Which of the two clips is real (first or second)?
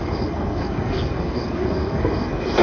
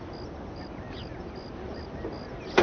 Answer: second